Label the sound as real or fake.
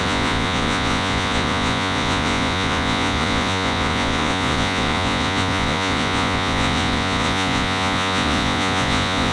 fake